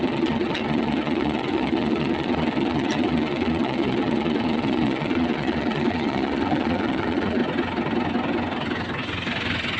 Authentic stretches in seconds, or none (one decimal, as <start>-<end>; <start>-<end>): 7.4-9.8